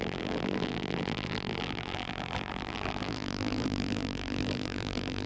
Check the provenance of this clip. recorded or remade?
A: remade